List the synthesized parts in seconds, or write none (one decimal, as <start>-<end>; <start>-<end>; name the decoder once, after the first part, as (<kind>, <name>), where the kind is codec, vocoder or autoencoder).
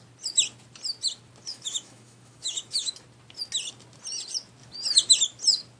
1.5-2.9 (autoencoder, DAC-VAE)